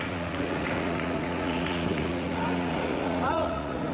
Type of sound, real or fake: fake